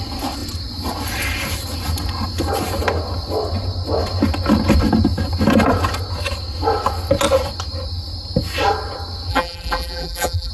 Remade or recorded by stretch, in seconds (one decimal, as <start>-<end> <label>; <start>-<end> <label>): 0.0-9.3 recorded; 9.3-10.5 remade